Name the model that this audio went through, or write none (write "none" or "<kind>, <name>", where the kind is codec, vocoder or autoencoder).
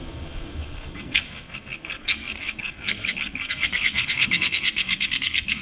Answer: codec, SNAC